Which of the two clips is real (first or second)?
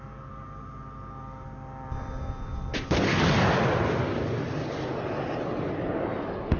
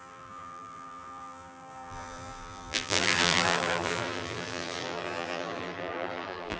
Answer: first